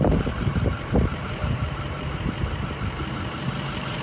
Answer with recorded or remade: remade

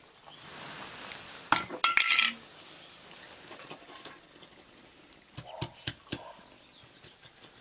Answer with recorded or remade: recorded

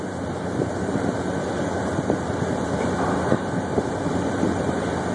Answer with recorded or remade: remade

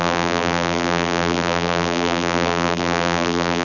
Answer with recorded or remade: remade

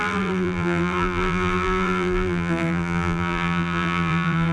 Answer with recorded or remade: remade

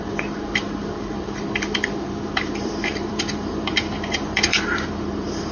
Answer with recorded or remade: remade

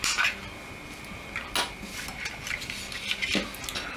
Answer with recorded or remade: recorded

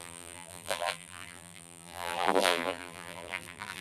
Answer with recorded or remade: remade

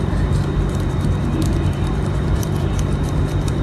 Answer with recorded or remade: remade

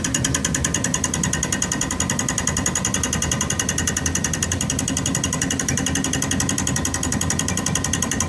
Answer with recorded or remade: remade